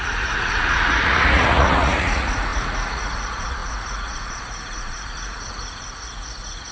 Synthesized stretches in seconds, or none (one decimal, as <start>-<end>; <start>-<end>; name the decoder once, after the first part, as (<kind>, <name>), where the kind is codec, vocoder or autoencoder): 0.0-6.7 (vocoder, Vocos)